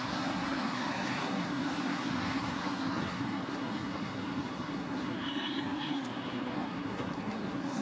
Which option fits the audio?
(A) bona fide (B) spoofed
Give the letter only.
B